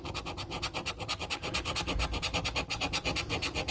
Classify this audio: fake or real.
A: real